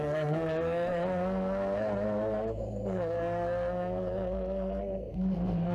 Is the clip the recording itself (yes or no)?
no